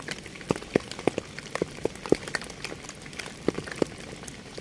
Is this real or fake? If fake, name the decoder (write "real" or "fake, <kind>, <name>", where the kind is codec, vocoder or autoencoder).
real